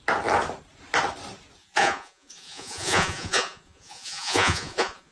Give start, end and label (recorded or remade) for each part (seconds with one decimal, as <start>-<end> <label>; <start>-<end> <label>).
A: 0.0-1.6 recorded; 1.6-5.1 remade